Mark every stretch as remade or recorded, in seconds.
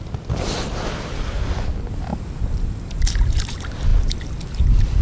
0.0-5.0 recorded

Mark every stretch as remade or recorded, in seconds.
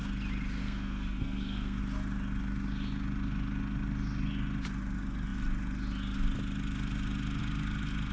0.0-0.6 recorded; 0.6-1.8 remade; 1.8-8.1 recorded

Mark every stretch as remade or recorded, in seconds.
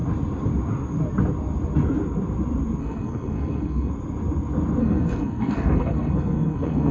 0.0-2.8 recorded; 2.8-3.9 remade; 3.9-4.8 recorded; 4.8-6.9 remade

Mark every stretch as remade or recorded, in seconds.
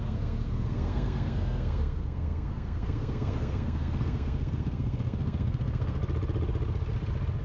0.0-6.0 remade; 6.0-7.4 recorded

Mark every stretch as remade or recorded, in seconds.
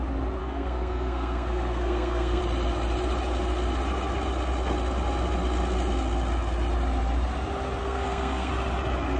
0.0-0.4 recorded; 0.4-2.4 remade; 2.4-7.8 recorded; 7.8-8.5 remade; 8.5-9.2 recorded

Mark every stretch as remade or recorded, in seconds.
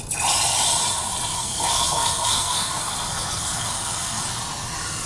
0.0-1.3 recorded; 1.3-4.3 remade; 4.3-5.1 recorded